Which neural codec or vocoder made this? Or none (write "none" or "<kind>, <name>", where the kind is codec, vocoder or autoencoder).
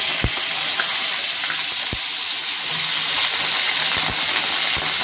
none